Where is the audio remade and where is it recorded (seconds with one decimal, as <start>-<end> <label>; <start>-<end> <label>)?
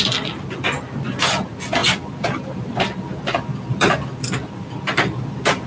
0.0-5.7 recorded